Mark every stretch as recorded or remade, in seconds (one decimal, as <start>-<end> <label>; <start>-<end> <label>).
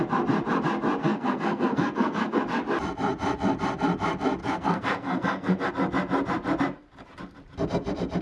0.0-1.0 recorded; 1.0-2.4 remade; 2.4-4.4 recorded; 4.4-5.7 remade; 5.7-8.2 recorded